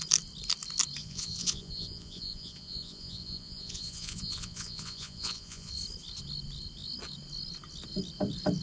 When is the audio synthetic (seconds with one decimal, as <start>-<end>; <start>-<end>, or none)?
1.0-5.7